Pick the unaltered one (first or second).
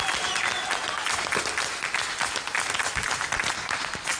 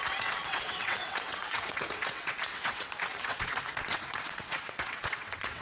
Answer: first